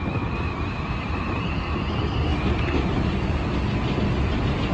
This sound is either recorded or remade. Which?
recorded